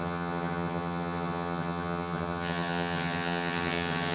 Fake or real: fake